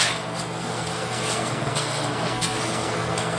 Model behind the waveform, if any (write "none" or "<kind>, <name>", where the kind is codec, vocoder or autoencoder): codec, SNAC